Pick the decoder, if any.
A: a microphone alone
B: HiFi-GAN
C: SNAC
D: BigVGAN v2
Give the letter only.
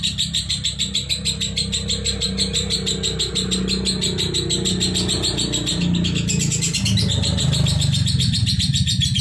A